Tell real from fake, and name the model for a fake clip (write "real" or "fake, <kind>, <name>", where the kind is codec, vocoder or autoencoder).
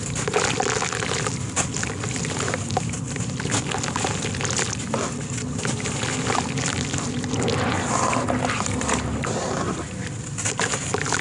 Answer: real